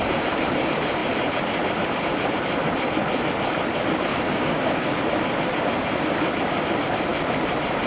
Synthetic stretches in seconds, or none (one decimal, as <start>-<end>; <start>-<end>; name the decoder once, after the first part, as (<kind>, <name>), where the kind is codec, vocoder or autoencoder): 4.1-5.0 (codec, DAC)